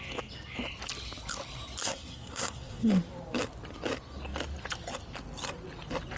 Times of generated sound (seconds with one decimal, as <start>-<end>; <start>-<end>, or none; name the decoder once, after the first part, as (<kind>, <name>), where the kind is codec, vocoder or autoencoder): 1.8-2.9 (codec, SNAC)